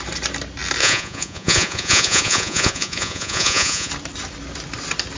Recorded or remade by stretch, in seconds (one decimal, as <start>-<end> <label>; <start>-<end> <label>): 0.0-0.8 recorded; 0.8-3.9 remade; 3.9-5.2 recorded